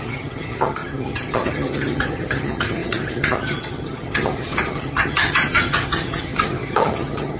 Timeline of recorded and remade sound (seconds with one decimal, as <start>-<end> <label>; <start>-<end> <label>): 0.0-7.4 remade